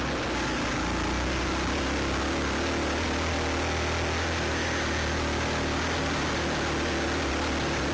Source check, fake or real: real